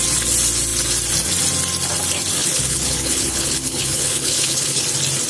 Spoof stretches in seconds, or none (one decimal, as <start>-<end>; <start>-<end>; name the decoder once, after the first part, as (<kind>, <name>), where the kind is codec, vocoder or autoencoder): 2.4-4.8 (codec, HILCodec)